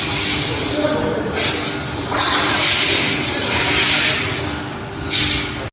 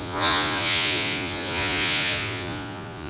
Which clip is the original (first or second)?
first